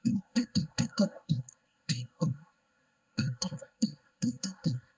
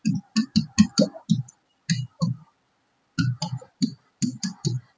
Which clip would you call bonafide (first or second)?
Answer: second